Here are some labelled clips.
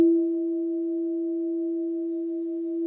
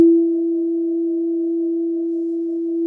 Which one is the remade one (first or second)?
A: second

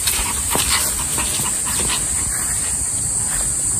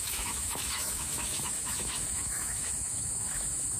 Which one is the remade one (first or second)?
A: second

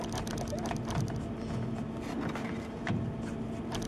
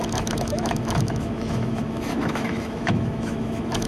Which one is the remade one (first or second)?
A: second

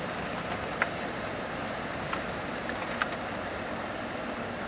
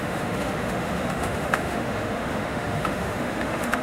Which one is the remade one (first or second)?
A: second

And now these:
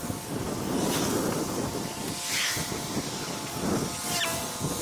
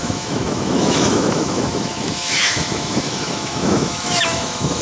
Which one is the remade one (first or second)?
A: second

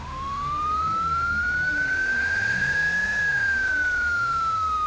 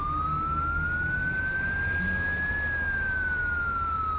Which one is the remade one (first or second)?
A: first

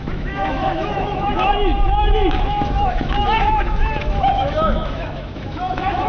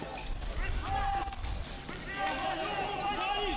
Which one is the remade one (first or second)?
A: first